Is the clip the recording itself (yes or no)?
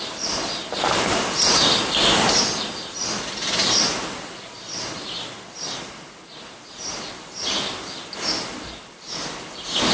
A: yes